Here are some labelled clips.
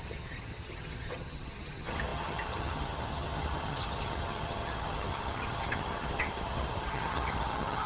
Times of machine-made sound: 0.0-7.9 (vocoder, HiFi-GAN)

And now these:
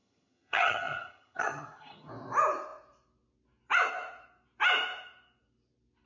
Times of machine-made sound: 0.0-2.1 (vocoder, HiFi-GAN)

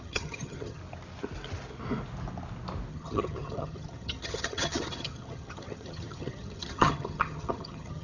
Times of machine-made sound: 0.0-0.8 (vocoder, HiFi-GAN); 2.9-8.0

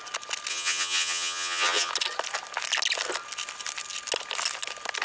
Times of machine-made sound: 0.5-1.9 (vocoder, HiFi-GAN)

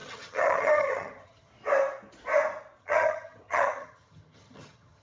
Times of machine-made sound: 0.0-1.5 (vocoder, HiFi-GAN); 2.8-5.0